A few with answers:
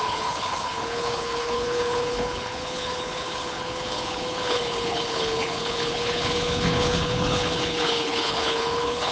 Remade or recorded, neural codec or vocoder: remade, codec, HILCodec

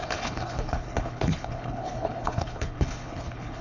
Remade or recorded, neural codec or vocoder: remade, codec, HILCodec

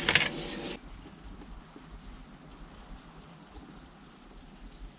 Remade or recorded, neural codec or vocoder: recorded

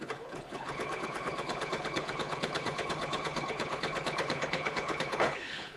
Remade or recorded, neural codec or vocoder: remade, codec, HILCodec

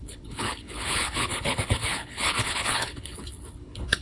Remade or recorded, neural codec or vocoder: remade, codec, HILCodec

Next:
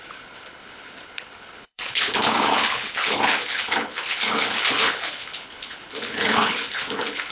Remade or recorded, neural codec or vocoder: remade, codec, HILCodec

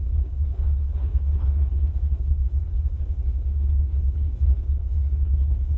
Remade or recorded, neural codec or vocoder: remade, codec, HILCodec